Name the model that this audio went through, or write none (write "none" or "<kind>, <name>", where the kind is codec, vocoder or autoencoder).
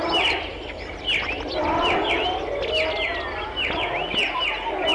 none